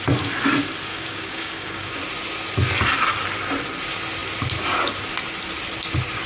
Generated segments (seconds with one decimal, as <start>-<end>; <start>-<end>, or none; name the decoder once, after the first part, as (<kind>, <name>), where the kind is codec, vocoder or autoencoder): 0.9-2.0 (codec, DAC)